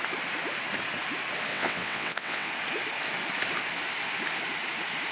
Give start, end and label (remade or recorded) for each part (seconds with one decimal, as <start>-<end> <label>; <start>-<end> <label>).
0.0-1.5 recorded; 1.5-2.5 remade; 2.5-5.1 recorded